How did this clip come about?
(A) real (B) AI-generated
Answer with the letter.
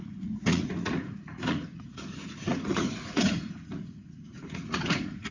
B